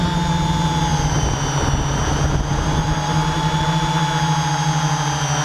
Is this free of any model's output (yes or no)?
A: yes